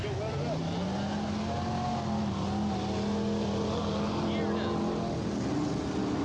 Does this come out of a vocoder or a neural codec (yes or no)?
no